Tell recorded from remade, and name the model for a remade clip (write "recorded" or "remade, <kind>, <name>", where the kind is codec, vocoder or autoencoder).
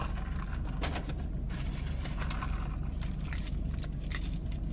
recorded